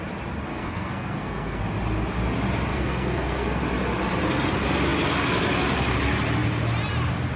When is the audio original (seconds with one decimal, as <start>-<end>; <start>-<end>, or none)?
0.0-0.5; 1.6-2.7; 3.6-7.4